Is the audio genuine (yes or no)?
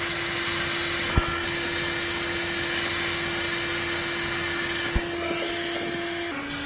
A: yes